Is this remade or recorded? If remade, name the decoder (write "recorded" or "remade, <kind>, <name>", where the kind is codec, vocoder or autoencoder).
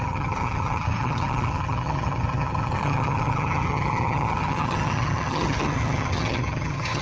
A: remade, vocoder, HiFi-GAN